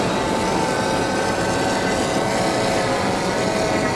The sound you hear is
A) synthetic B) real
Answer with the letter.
B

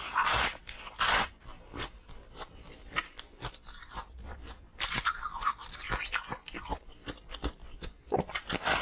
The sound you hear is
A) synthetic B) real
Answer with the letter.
A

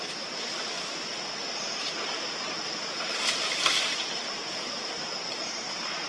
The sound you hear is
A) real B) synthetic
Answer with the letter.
A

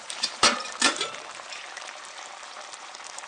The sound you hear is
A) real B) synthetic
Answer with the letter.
B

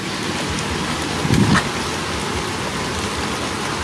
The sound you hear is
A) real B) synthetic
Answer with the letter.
A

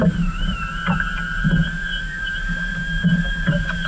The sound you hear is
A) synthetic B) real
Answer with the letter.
A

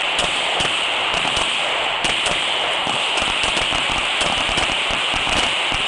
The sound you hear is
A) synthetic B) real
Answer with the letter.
A